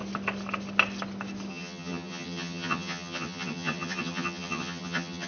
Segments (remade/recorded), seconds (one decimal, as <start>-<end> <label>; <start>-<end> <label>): 0.0-1.5 recorded; 1.5-5.3 remade